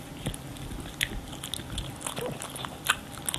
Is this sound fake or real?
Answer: real